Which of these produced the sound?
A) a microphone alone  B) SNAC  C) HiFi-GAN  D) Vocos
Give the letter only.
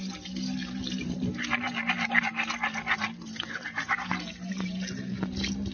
A